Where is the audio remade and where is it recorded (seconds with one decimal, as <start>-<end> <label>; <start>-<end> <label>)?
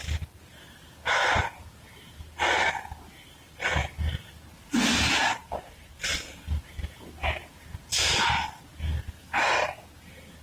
0.0-5.3 recorded; 5.3-6.0 remade; 6.0-10.4 recorded